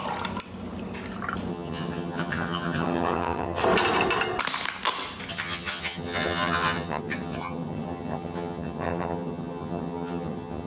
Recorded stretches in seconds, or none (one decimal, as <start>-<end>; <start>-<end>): 0.0-1.5; 3.6-5.3